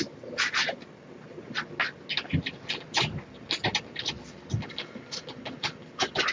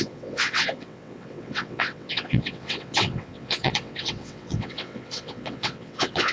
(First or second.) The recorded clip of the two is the first